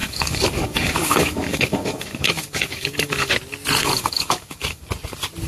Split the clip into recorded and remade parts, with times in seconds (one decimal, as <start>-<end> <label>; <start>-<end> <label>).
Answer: 0.0-3.3 remade; 3.3-3.8 recorded; 3.8-4.8 remade; 4.8-5.5 recorded

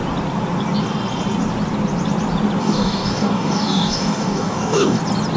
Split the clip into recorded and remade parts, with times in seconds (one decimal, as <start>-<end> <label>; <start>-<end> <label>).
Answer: 0.0-2.6 recorded; 2.6-5.0 remade; 5.0-5.4 recorded

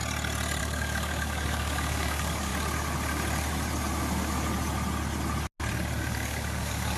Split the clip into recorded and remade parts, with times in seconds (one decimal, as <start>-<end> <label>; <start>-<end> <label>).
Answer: 0.0-0.6 recorded; 0.6-2.5 remade; 2.5-6.1 recorded; 6.1-7.0 remade

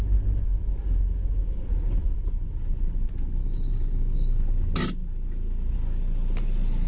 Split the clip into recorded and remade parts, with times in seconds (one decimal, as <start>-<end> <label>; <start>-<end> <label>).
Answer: 0.0-3.4 recorded; 3.4-4.4 remade; 4.4-6.9 recorded

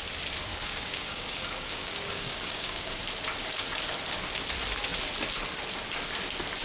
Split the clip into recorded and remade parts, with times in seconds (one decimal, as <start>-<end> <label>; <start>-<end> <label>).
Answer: 0.0-0.5 recorded; 0.5-3.0 remade; 3.0-6.6 recorded

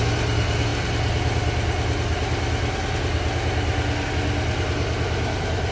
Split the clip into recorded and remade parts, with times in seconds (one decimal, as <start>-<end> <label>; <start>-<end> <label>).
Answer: 0.0-5.7 recorded

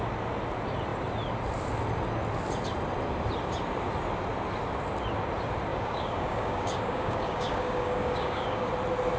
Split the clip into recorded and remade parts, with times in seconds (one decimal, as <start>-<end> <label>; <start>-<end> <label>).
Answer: 0.0-5.7 recorded; 5.7-8.7 remade; 8.7-9.2 recorded

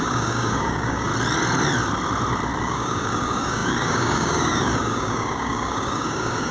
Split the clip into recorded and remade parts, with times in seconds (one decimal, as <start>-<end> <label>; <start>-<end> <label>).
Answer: 0.0-1.1 remade; 1.1-2.6 recorded; 2.6-6.5 remade